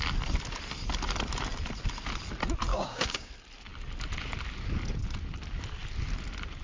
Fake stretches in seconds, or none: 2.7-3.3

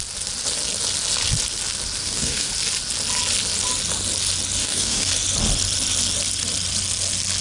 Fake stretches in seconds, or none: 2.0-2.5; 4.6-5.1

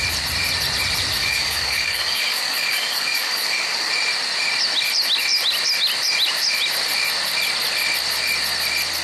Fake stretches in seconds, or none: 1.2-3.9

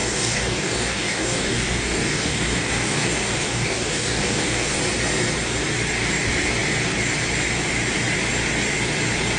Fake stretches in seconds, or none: 0.0-4.8

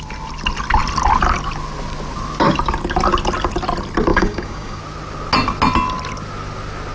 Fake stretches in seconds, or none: 4.1-4.8

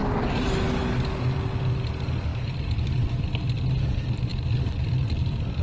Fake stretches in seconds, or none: none

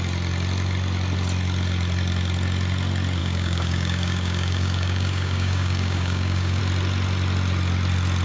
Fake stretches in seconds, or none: 3.2-6.6